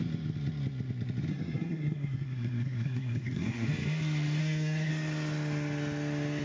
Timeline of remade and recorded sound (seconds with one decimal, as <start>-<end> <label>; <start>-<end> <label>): 0.0-1.3 recorded; 1.3-3.7 remade; 3.7-4.4 recorded; 4.4-4.9 remade; 4.9-6.4 recorded